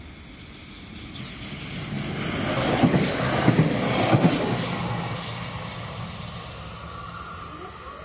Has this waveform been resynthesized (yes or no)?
no